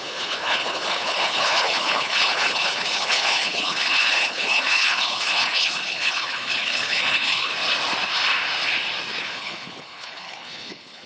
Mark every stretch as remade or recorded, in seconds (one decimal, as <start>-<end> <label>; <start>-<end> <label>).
0.0-7.5 remade; 7.5-9.2 recorded; 9.2-11.1 remade